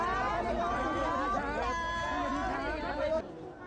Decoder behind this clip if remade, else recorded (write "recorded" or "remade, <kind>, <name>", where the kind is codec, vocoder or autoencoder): recorded